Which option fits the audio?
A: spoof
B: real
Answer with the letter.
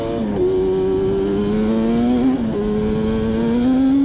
B